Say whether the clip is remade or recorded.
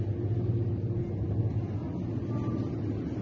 recorded